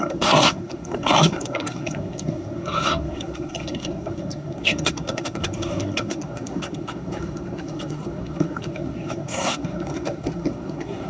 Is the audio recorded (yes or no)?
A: no